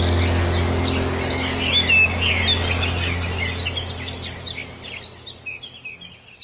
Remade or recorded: recorded